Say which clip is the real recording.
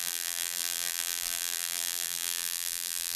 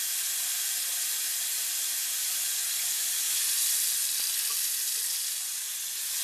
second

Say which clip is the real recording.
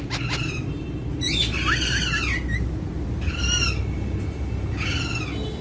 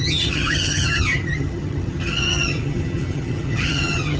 first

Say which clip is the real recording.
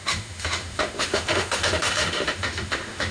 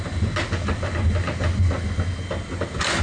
second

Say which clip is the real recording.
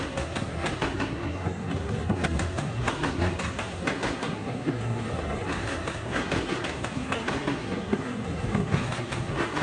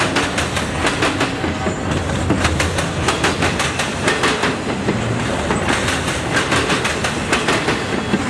second